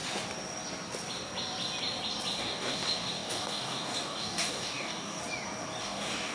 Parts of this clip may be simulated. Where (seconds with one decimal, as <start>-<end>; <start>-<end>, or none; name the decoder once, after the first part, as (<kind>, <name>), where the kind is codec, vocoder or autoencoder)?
2.4-5.2 (codec, DAC); 5.8-6.3